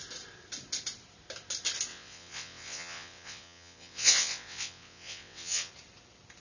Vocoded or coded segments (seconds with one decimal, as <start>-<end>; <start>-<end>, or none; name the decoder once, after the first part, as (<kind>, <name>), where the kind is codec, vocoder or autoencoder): 1.9-5.7 (vocoder, WaveNeXt)

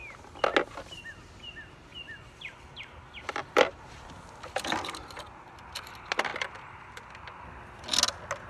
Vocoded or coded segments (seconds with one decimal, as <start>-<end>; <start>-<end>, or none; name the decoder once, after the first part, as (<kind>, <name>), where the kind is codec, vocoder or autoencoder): 1.9-4.1 (vocoder, BigVGAN v2); 6.3-7.1

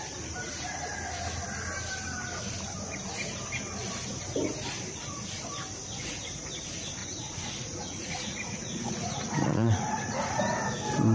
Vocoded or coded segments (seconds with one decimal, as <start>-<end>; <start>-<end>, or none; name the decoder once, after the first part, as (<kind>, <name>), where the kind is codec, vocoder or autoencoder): 7.0-10.4 (vocoder, Vocos)

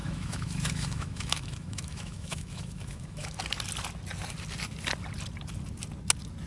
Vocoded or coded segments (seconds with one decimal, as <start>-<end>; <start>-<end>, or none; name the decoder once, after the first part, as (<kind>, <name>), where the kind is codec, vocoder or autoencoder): 0.0-3.4 (autoencoder, DAC-VAE)

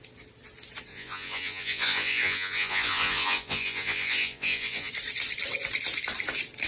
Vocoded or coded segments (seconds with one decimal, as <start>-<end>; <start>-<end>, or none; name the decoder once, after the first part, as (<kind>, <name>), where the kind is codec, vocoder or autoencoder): 0.9-4.9 (vocoder, Vocos)

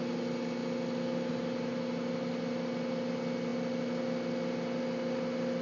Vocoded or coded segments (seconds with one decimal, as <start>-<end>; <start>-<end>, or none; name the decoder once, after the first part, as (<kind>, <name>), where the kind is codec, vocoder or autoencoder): none

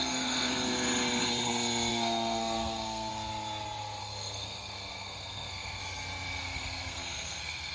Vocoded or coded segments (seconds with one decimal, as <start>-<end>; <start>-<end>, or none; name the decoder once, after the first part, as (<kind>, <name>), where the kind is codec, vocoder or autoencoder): 0.0-0.5 (codec, SNAC); 1.9-3.1; 4.0-5.8; 6.4-7.7

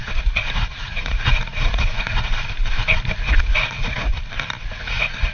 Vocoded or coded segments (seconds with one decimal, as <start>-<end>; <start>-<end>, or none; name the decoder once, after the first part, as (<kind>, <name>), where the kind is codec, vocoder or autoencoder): 0.0-2.3 (vocoder, Vocos); 3.3-4.1; 4.8-5.3